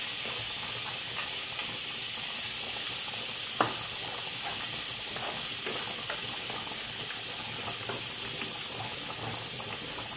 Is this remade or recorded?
recorded